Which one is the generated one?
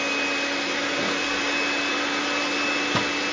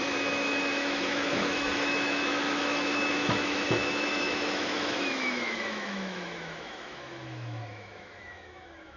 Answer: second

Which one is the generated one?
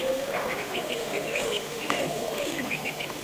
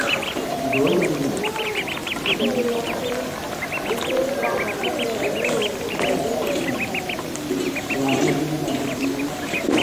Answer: first